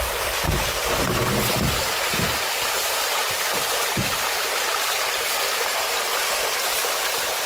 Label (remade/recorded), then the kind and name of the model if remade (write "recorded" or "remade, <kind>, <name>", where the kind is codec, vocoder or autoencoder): recorded